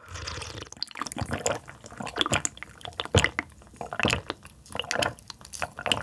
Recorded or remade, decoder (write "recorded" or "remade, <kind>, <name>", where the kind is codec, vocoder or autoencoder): recorded